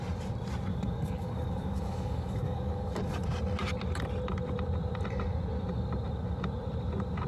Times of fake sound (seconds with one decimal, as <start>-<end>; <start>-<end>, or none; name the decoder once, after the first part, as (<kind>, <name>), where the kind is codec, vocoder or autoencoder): 0.7-3.1 (codec, DAC)